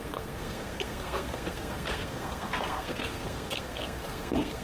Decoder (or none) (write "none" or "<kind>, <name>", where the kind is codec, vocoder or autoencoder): codec, SNAC